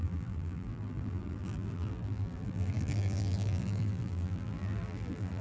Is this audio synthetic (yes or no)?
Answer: yes